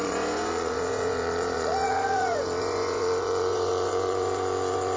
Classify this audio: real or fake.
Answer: fake